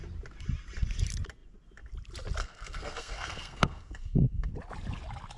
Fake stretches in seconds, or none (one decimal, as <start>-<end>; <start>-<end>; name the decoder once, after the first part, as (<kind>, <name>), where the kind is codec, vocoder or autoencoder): 2.4-4.5 (codec, SNAC)